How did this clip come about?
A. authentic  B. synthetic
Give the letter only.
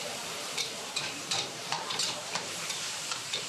B